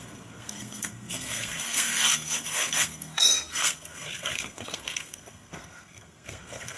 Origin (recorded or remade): remade